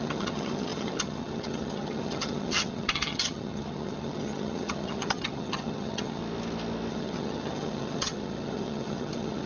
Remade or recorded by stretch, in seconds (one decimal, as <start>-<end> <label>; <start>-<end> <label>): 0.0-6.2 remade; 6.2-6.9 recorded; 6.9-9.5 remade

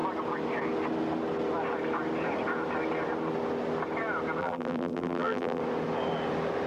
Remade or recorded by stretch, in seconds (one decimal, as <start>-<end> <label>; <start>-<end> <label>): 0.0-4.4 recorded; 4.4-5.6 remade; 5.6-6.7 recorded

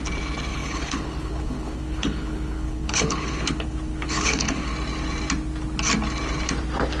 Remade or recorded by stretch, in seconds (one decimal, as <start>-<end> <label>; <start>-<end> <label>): 0.0-0.5 recorded; 0.5-4.7 remade; 4.7-7.0 recorded

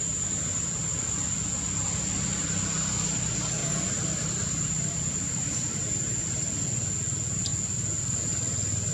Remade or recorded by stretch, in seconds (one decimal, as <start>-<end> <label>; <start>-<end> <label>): 0.0-3.6 recorded; 3.6-6.2 remade; 6.2-8.9 recorded

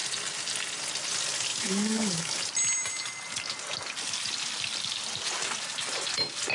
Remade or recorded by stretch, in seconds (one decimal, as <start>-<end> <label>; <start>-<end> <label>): 0.0-1.5 recorded; 1.5-2.3 remade; 2.3-6.5 recorded

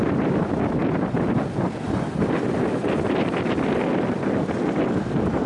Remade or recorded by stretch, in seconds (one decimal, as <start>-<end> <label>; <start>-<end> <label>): 0.0-5.5 recorded

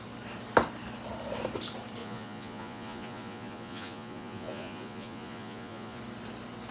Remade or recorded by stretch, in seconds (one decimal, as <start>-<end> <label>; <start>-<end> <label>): 0.0-2.0 recorded; 2.0-6.0 remade; 6.0-6.7 recorded